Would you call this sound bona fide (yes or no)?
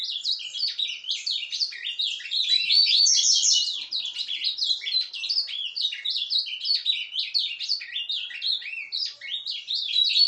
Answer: yes